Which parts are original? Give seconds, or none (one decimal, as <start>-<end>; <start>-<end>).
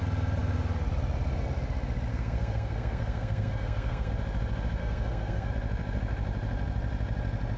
0.0-2.1; 4.1-4.8; 5.5-7.6